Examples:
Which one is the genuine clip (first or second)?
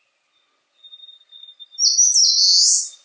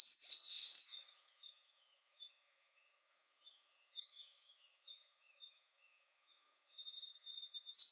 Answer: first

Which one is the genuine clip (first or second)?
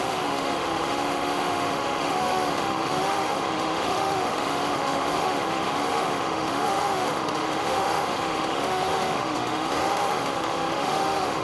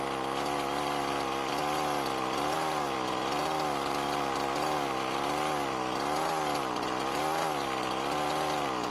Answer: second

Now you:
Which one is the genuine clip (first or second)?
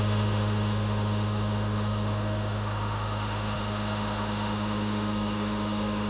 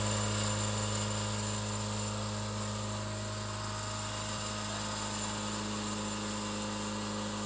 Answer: second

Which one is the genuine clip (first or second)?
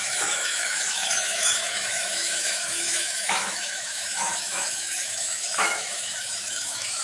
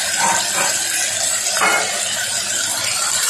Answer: second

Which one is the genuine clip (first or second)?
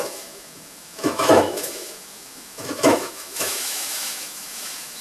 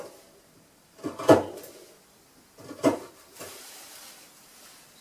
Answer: second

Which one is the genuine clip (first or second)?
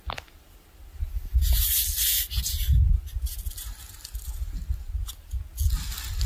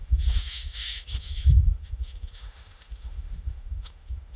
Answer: first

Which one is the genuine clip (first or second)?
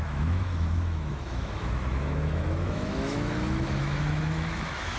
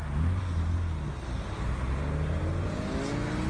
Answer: second